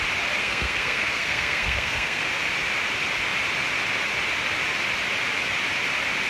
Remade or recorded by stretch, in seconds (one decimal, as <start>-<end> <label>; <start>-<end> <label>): 0.0-0.4 recorded; 0.4-2.2 remade; 2.2-6.3 recorded